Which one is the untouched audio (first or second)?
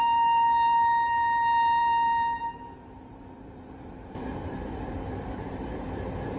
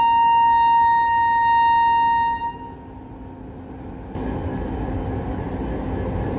second